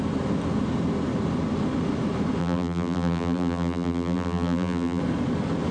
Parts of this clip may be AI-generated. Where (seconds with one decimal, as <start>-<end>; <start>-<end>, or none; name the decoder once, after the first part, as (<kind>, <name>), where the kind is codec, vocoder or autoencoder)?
2.4-5.0 (vocoder, BigVGAN v2)